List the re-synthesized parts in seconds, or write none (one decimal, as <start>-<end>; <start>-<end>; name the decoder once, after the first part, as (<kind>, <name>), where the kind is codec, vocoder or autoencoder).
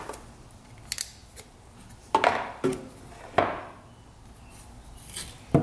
none